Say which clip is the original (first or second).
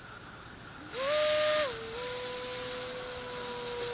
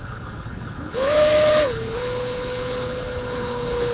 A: first